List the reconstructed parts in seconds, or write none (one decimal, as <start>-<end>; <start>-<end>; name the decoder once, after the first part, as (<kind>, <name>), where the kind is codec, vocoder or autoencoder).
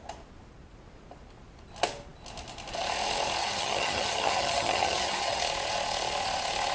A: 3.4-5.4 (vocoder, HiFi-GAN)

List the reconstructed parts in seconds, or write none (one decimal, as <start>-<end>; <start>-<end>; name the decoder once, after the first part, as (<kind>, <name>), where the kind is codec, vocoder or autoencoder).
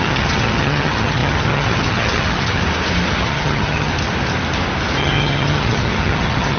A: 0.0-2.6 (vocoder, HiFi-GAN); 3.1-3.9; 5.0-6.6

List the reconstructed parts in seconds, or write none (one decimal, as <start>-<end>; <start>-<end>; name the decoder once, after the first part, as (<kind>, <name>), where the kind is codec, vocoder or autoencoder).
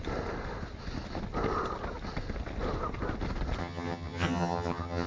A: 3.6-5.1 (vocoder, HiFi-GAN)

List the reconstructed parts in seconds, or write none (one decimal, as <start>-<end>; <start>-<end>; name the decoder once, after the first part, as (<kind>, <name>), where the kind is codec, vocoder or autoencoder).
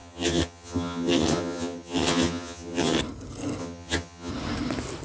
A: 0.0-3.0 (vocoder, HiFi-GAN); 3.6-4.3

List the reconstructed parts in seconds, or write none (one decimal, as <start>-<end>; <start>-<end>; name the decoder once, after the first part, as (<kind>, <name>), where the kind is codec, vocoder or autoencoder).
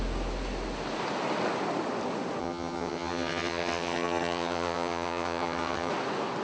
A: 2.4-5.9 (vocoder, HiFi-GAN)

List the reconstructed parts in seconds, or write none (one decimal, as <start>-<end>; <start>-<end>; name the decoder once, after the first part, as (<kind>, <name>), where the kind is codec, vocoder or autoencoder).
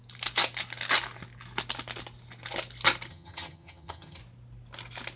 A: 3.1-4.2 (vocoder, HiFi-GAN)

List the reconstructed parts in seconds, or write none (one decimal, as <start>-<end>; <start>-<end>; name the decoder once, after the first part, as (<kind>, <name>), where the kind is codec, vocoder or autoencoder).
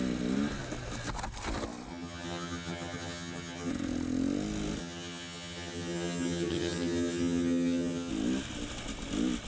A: 1.9-3.7 (vocoder, HiFi-GAN); 4.8-8.1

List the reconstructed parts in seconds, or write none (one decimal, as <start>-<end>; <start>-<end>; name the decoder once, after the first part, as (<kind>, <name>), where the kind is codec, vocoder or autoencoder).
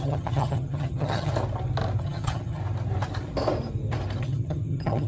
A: 0.0-1.3 (vocoder, HiFi-GAN); 2.0-2.6; 4.2-5.1